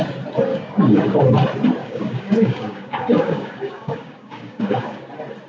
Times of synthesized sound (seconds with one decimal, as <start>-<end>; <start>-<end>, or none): 0.5-1.2; 1.8-5.1